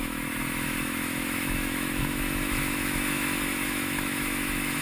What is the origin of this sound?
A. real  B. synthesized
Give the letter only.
B